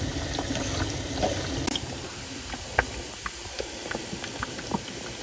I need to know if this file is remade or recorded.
remade